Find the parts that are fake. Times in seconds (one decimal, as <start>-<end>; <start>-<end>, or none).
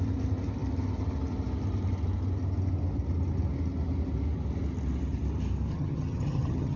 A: 5.7-6.8